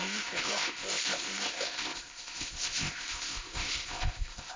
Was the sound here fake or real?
fake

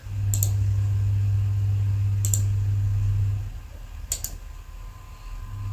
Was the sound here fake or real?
real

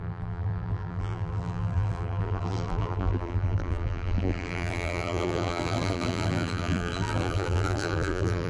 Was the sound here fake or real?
fake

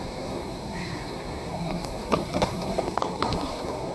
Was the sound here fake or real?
fake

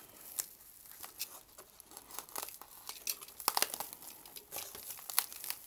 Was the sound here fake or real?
real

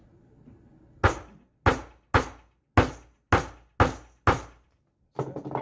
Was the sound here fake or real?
real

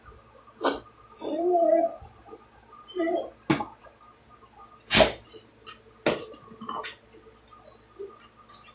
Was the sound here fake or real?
real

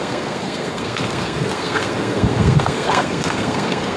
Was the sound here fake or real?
fake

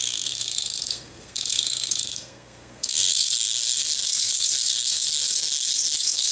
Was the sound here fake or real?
fake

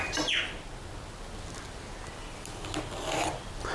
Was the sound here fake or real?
real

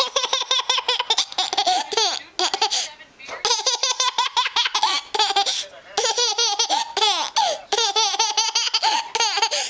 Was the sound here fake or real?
real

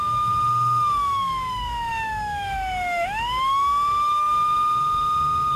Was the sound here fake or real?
fake